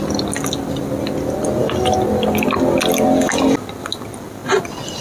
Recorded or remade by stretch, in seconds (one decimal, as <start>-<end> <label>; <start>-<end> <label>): 0.0-5.0 recorded